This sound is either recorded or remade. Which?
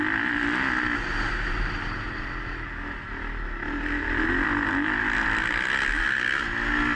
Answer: recorded